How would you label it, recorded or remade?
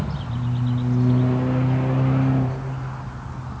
recorded